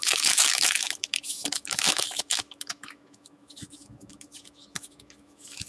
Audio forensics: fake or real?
fake